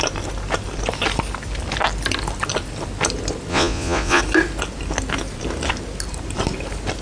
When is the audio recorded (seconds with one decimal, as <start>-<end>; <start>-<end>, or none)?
0.0-3.5; 4.2-7.0